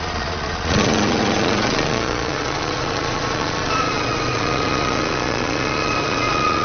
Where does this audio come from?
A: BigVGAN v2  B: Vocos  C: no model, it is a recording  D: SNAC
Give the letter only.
B